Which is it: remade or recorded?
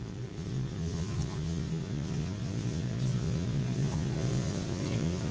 remade